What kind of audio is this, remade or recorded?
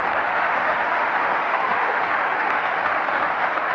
remade